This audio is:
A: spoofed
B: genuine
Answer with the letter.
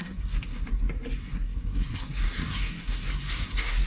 A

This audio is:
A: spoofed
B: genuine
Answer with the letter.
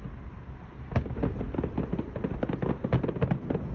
B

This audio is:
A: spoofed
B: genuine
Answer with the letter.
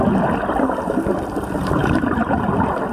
B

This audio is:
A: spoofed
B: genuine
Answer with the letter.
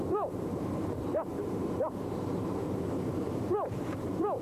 A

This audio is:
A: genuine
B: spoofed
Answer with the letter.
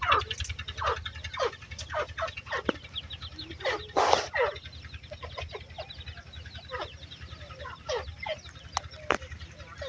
A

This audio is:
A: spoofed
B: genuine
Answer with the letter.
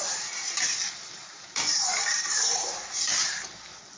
A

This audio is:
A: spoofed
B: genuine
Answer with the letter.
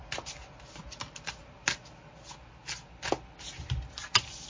B